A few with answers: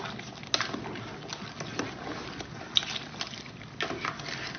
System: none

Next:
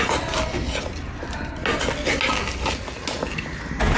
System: none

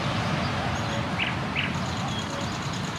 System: none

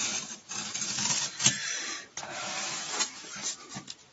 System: vocoder, BigVGAN v2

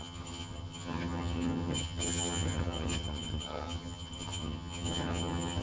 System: vocoder, HiFi-GAN